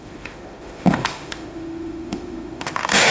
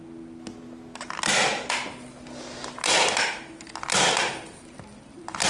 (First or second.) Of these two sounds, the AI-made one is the first